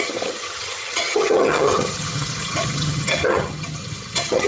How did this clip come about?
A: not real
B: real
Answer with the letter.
A